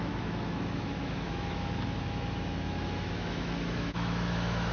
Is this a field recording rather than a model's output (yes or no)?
no